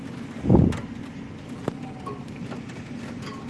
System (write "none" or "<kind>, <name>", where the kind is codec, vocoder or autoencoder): none